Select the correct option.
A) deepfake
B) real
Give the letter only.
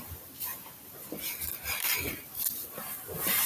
A